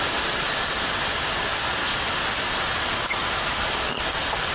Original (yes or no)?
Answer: yes